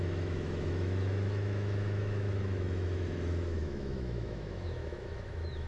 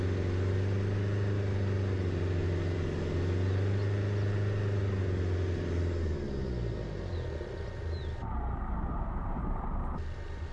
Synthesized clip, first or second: first